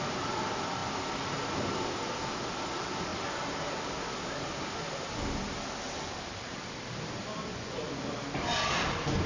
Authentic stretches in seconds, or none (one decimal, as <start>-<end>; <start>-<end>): 0.0-7.5; 8.0-9.3